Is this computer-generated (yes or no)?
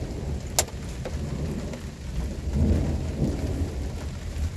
no